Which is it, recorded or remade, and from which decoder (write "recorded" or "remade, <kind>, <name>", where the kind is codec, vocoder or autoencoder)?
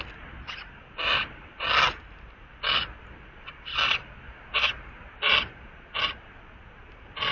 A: recorded